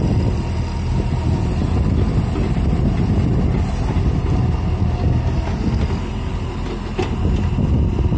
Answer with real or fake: real